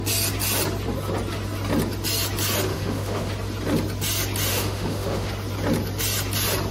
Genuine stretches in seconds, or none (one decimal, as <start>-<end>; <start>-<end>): 0.0-2.7; 3.3-4.5; 5.3-6.7